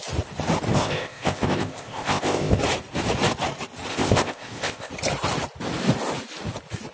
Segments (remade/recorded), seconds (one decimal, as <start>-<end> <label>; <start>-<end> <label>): 0.0-0.7 recorded; 0.7-2.6 remade; 2.6-3.9 recorded; 3.9-4.9 remade; 4.9-6.9 recorded